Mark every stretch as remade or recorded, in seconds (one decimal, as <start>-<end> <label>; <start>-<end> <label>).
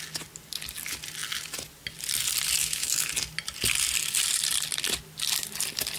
0.0-2.6 recorded; 2.6-3.1 remade; 3.1-6.0 recorded